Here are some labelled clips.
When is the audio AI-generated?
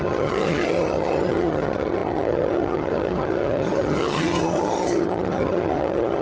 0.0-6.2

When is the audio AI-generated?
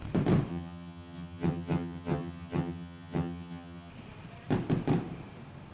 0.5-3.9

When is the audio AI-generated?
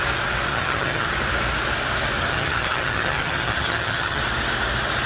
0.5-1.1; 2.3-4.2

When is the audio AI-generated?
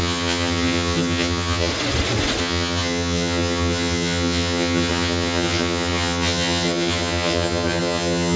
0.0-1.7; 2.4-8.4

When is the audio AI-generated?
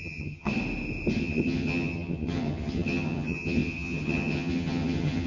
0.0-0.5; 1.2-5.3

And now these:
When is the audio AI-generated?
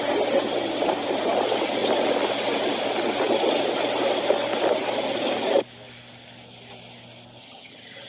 7.4-8.1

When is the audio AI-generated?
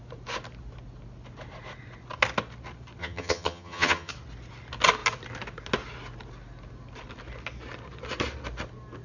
3.0-4.1